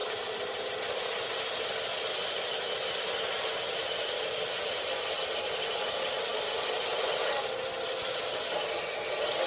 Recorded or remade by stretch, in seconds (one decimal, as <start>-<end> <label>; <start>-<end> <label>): 0.0-9.5 recorded